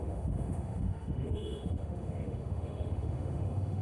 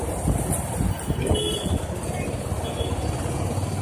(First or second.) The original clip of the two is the second